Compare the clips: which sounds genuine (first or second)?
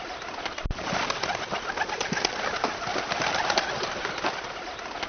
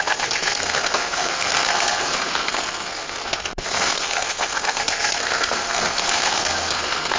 first